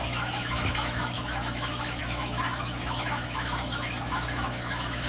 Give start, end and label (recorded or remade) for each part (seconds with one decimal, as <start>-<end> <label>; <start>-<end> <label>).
0.0-5.1 remade